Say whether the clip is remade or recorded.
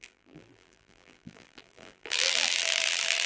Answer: remade